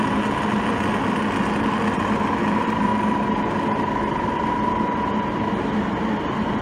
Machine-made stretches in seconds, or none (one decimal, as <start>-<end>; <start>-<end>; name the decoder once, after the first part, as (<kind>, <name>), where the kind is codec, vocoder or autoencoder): none